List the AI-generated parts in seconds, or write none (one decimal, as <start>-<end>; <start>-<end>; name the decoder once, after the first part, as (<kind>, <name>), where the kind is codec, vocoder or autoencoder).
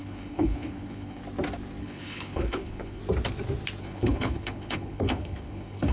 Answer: 0.0-1.2 (codec, HILCodec); 1.8-3.0; 3.8-5.9